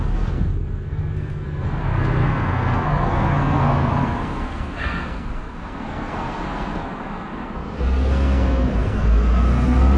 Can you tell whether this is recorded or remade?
remade